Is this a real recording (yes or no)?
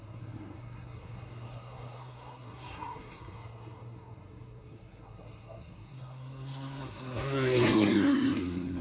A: no